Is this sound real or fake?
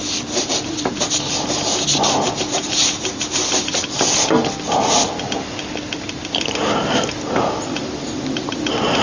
real